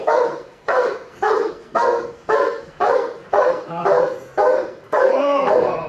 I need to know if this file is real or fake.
fake